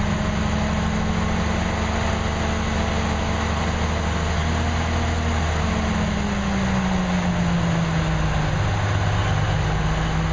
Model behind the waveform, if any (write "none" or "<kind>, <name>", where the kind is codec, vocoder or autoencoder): none